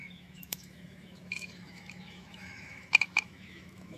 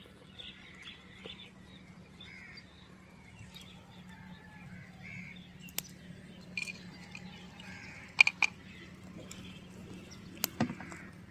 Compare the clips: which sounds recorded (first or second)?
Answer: second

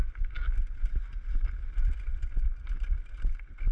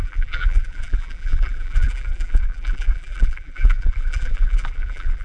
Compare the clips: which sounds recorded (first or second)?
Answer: first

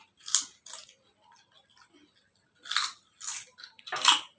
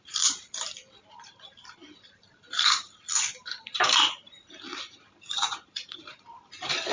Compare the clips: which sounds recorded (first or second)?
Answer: first